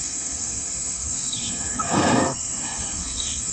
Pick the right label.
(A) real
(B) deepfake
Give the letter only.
B